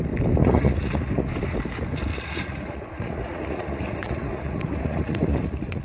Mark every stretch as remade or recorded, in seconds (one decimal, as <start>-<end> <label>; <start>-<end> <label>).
0.0-0.4 recorded; 0.4-1.3 remade; 1.3-2.1 recorded; 2.1-5.8 remade